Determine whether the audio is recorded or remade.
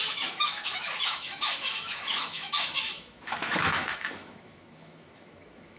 remade